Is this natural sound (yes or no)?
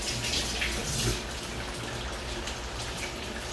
yes